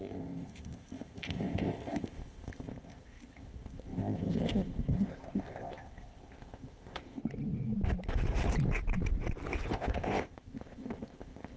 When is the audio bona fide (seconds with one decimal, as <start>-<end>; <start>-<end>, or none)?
7.2-9.7